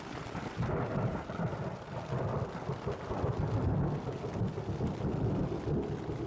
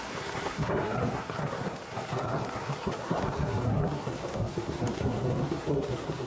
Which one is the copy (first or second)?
second